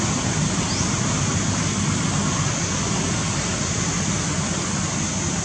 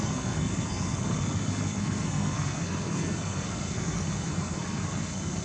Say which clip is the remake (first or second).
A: second